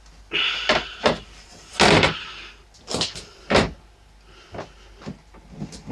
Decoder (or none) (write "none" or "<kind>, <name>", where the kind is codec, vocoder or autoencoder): none